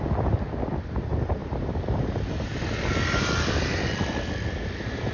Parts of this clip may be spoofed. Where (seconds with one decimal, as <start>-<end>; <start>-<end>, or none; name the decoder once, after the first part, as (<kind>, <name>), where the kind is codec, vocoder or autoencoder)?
none